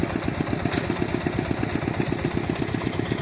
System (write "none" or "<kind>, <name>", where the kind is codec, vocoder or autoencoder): none